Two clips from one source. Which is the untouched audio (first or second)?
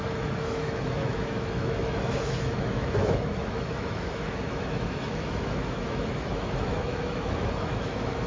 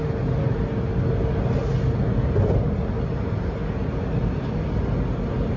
second